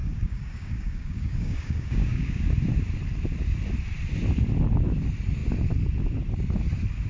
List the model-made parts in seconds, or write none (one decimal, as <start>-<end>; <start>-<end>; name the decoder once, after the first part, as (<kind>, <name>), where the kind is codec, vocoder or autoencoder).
0.0-2.4 (codec, DAC)